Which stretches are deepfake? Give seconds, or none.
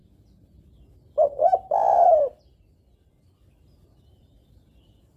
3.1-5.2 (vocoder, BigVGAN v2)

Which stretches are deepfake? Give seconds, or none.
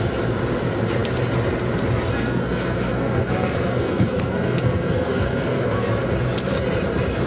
2.1-5.9 (codec, SNAC)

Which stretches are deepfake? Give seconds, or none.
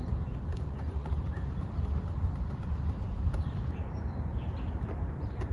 0.5-1.1 (vocoder, Vocos)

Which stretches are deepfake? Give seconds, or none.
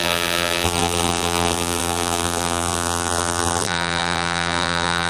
0.0-5.1 (vocoder, BigVGAN v2)